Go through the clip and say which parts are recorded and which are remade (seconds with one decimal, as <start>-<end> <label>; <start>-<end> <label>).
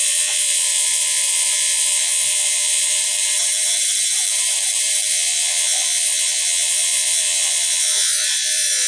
0.0-3.0 remade; 3.0-5.1 recorded; 5.1-8.9 remade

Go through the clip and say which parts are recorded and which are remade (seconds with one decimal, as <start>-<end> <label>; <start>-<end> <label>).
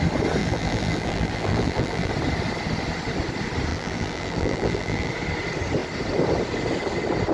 0.0-0.4 recorded; 0.4-2.1 remade; 2.1-3.7 recorded; 3.7-5.1 remade; 5.1-7.3 recorded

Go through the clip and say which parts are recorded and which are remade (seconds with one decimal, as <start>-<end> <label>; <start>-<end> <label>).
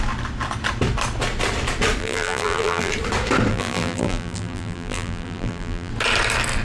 0.0-2.0 recorded; 2.0-2.9 remade; 2.9-3.5 recorded; 3.5-5.9 remade; 5.9-6.6 recorded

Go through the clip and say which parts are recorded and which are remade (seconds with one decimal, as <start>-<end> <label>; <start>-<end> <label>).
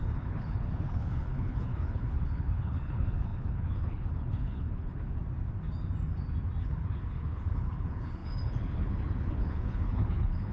0.0-5.2 remade; 5.2-6.6 recorded; 6.6-10.5 remade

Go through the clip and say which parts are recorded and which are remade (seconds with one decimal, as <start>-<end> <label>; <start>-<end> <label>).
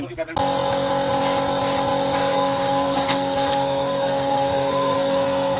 0.0-2.2 recorded; 2.2-5.6 remade